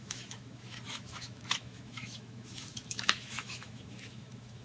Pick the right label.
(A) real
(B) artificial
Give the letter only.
B